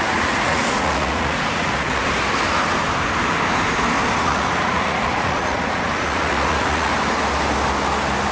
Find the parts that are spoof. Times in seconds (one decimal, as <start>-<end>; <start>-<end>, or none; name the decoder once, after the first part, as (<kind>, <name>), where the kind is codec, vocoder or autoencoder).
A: 0.0-2.0 (vocoder, Vocos); 4.2-6.9